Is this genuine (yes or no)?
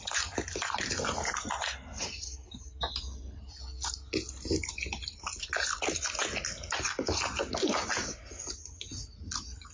yes